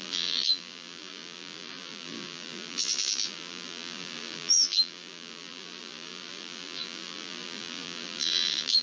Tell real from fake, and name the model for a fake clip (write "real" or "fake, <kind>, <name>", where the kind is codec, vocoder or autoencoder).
fake, vocoder, BigVGAN v2